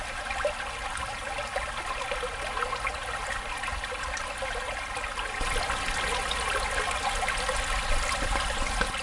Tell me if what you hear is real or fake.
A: real